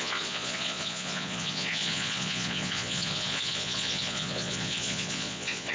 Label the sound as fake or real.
fake